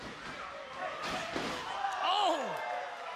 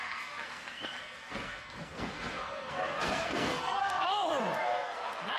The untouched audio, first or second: first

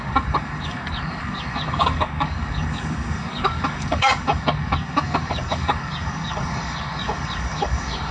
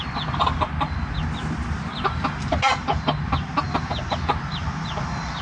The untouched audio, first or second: second